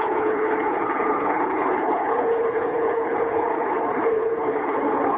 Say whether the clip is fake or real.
fake